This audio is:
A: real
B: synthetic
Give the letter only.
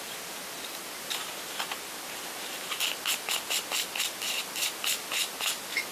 A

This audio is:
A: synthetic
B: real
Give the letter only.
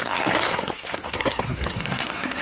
A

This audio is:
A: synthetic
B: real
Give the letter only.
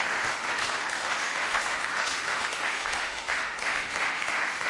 A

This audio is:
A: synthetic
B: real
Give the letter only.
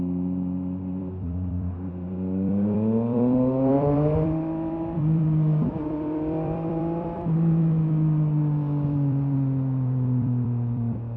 A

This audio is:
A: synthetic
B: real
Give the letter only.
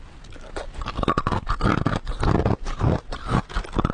B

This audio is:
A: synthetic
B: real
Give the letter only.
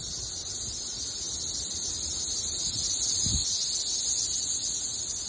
B